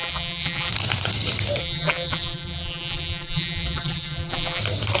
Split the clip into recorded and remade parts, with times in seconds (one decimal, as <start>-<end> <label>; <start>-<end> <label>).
0.0-0.7 remade; 0.7-1.6 recorded; 1.6-4.6 remade; 4.6-5.0 recorded